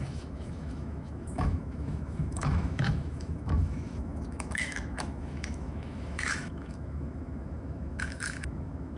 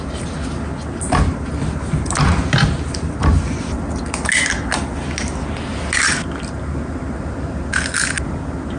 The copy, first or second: first